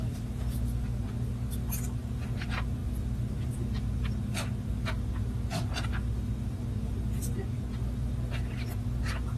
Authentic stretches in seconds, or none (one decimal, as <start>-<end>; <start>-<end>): 0.0-9.4

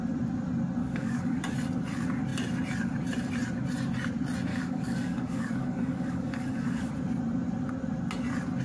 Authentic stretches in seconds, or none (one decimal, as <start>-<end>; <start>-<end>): 0.0-0.8; 1.4-4.5; 6.9-8.6

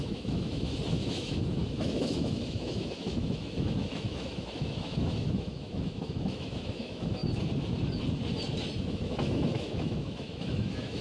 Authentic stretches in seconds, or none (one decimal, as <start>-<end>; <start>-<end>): 7.2-8.8

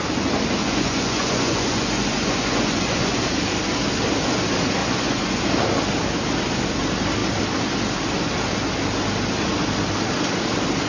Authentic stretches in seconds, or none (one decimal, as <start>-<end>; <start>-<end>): 0.0-0.6; 3.2-4.8; 5.4-10.9